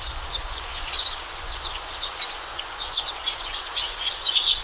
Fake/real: fake